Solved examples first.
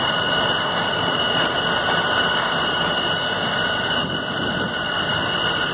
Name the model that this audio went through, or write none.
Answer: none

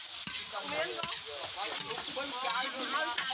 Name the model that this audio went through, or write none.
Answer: none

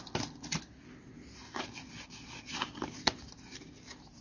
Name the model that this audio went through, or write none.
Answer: none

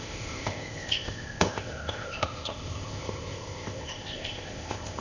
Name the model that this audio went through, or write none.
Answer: codec, ZipCodec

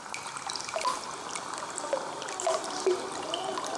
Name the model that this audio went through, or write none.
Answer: none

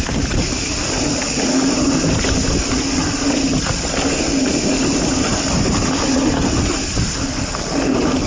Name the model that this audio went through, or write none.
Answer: none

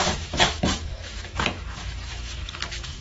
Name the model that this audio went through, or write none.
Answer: autoencoder, DAC-VAE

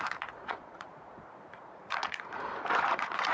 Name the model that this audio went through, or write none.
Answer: vocoder, Vocos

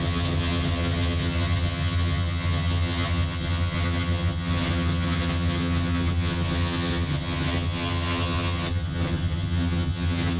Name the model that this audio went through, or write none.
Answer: vocoder, HiFi-GAN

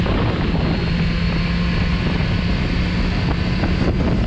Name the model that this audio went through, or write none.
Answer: none